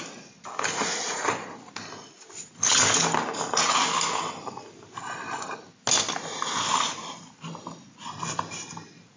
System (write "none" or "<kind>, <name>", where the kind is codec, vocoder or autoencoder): none